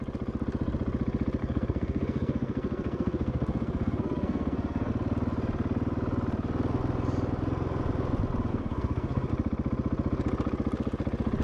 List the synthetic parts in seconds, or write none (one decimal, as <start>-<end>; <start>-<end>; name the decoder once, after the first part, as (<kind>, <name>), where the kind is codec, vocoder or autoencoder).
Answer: 1.4-4.9 (codec, SNAC); 8.5-9.3